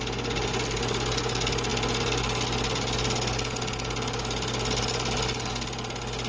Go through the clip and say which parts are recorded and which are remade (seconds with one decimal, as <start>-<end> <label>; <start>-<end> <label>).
0.0-6.3 recorded